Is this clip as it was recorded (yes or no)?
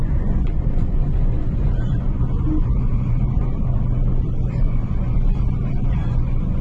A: no